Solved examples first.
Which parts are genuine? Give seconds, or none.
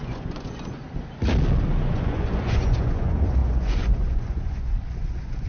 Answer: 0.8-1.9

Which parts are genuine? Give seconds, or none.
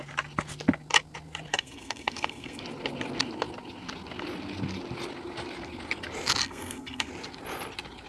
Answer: 0.0-1.5; 2.6-6.4; 7.1-8.1